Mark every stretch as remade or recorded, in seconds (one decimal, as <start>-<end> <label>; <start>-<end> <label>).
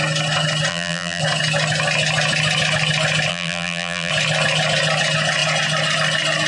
0.0-0.7 recorded; 0.7-1.2 remade; 1.2-3.3 recorded; 3.3-4.1 remade; 4.1-6.5 recorded